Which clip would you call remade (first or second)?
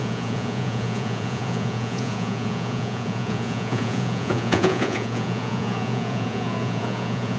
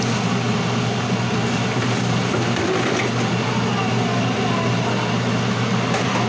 first